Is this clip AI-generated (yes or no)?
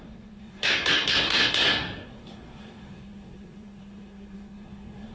yes